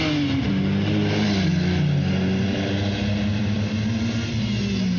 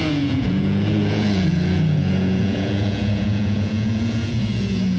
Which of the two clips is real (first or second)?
first